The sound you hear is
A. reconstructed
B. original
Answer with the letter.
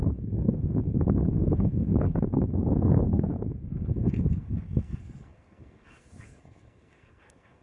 A